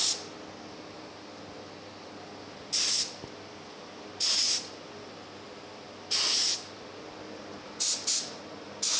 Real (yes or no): yes